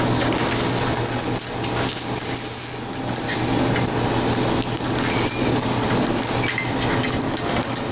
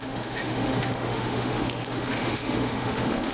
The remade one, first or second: second